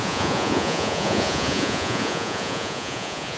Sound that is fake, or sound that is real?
fake